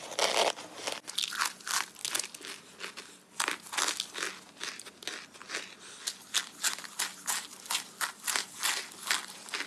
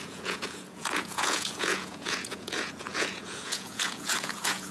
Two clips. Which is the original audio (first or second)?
first